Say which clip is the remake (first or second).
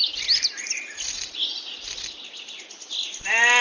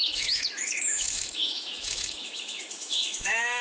second